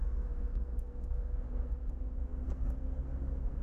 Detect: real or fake fake